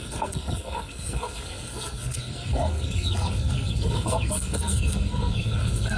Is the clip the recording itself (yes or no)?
no